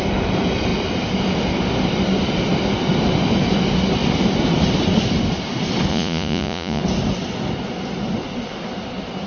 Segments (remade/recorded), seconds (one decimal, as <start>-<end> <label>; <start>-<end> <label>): 0.0-5.9 recorded; 5.9-6.8 remade; 6.8-9.3 recorded